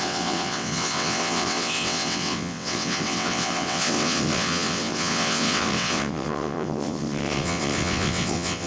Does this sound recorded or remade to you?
remade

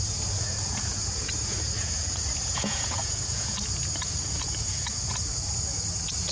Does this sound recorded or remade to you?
remade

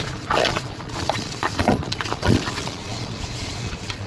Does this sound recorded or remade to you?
remade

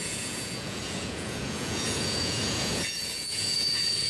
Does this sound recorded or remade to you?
remade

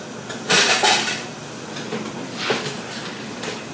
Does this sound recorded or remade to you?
recorded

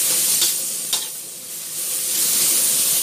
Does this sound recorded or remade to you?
recorded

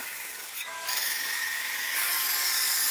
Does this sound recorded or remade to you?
remade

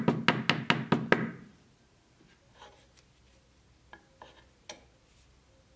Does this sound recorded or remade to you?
recorded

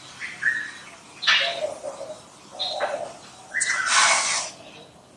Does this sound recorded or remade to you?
recorded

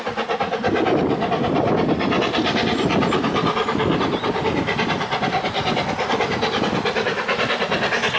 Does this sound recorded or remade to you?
recorded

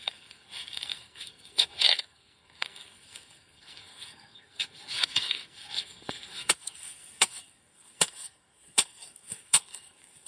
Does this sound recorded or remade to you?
remade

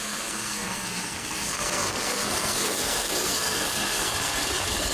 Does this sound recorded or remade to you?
remade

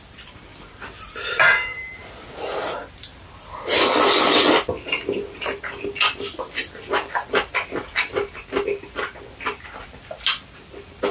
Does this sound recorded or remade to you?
remade